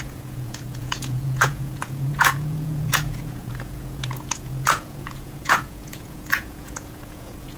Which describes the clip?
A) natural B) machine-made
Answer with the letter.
B